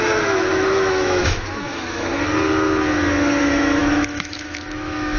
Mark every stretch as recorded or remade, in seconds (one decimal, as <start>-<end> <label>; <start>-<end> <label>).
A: 0.0-2.1 remade; 2.1-3.4 recorded; 3.4-5.2 remade